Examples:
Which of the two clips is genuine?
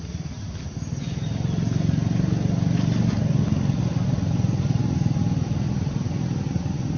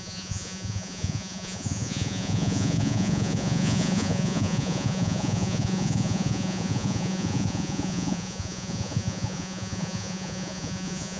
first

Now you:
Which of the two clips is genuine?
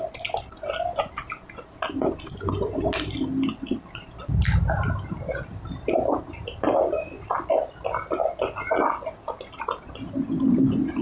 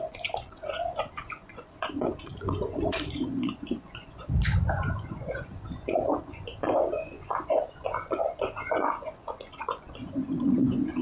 first